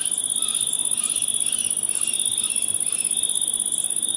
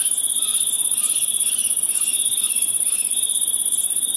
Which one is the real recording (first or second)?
first